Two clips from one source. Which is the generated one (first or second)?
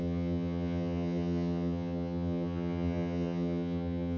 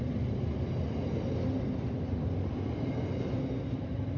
first